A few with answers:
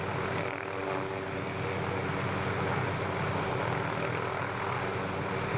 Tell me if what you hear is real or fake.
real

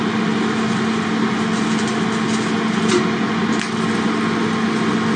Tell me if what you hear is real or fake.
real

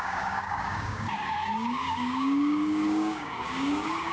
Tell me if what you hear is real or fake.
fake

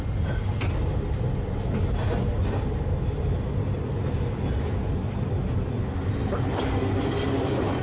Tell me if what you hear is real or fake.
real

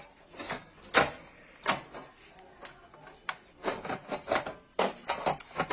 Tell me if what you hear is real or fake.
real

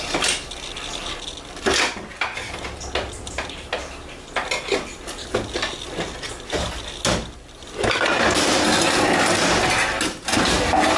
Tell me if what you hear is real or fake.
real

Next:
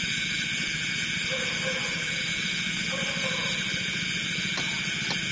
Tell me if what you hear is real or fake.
real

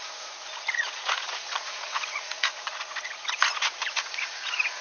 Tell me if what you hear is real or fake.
fake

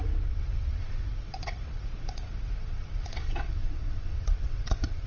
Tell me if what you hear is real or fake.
fake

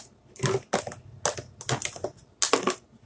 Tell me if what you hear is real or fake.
real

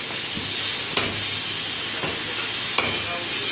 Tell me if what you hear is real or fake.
real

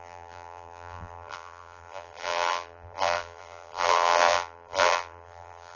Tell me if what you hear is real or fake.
fake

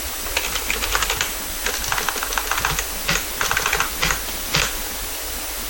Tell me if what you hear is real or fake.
real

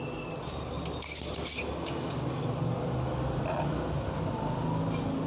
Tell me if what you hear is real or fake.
real